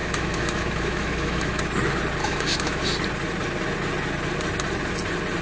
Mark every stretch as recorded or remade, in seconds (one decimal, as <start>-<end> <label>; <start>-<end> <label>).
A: 0.0-1.6 remade; 1.6-2.2 recorded; 2.2-2.8 remade; 2.8-5.4 recorded